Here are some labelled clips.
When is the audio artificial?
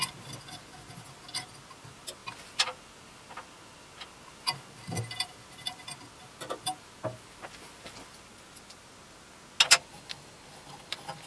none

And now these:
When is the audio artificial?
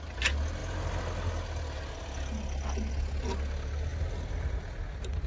none